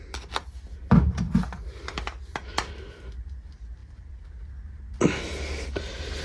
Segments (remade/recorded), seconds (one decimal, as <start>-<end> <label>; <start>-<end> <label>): 0.0-6.2 recorded